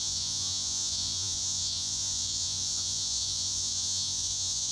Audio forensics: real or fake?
fake